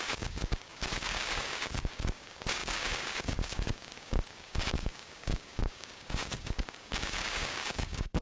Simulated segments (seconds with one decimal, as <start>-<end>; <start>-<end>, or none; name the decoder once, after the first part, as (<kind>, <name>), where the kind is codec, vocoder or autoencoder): 0.0-8.2 (codec, DAC)